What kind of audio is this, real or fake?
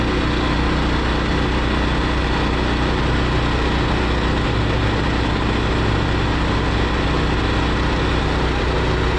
real